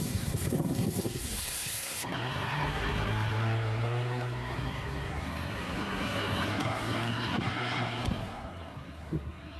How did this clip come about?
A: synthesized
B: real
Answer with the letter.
A